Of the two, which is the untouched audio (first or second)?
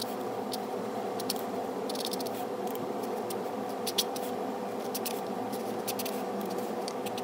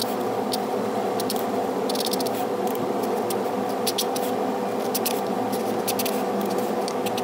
second